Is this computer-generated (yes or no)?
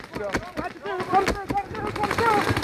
no